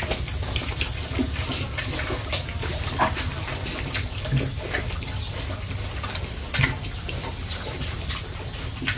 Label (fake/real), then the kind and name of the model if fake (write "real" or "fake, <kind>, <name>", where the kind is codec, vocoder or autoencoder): real